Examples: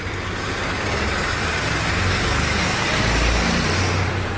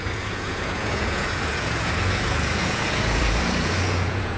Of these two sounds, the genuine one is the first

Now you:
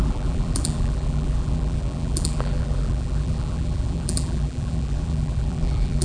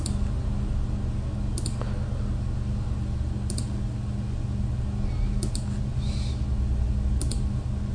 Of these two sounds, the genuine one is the second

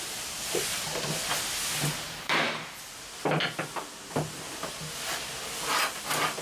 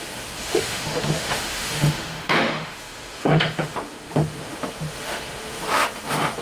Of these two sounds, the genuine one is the first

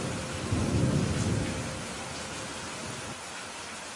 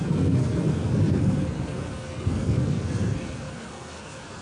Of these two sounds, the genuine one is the first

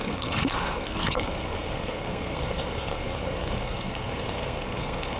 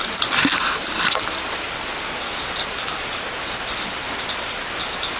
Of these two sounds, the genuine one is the second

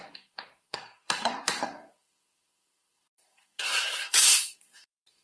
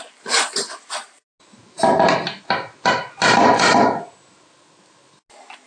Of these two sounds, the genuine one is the second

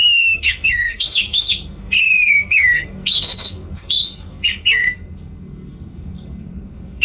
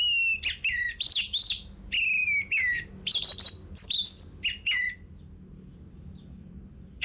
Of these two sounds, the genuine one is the second